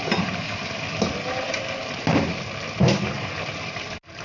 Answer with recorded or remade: recorded